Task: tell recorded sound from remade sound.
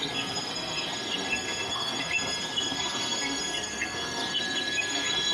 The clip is remade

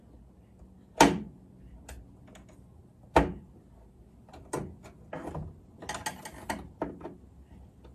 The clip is recorded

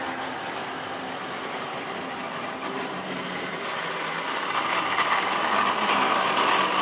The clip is recorded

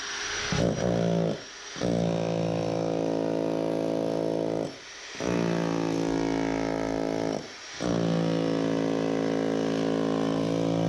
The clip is recorded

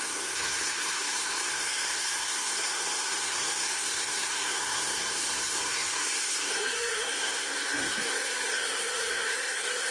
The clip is remade